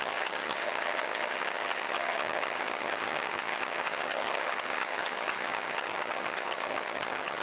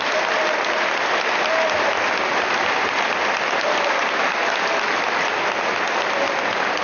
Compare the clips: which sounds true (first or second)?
second